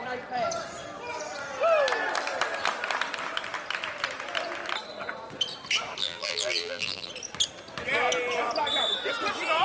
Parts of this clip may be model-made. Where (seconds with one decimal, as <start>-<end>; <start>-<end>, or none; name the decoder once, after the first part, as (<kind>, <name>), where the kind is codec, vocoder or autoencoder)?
6.0-7.1 (vocoder, BigVGAN v2)